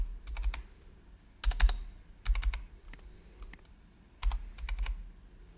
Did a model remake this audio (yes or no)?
no